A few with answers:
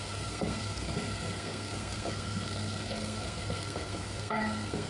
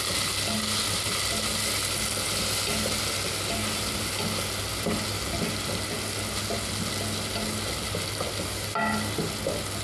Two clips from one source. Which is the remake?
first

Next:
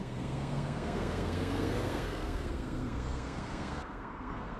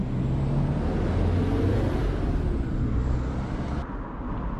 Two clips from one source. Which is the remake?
first